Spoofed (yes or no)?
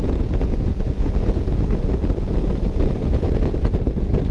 yes